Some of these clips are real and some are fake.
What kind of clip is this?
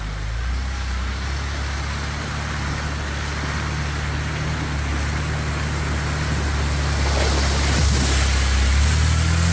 real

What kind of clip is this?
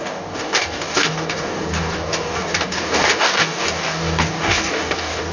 fake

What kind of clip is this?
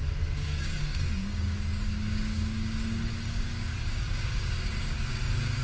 fake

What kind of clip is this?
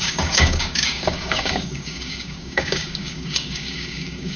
fake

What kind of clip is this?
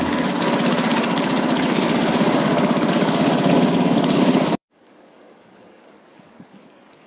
fake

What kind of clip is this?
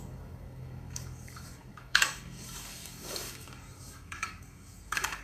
fake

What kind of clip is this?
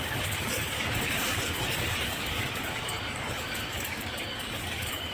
fake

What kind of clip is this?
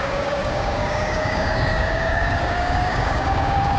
fake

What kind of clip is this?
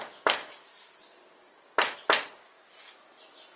real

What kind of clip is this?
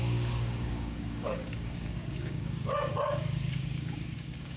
fake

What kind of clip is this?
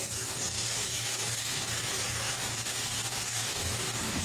fake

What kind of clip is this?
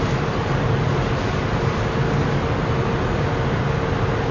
real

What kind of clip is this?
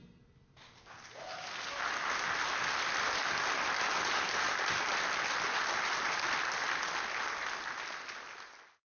real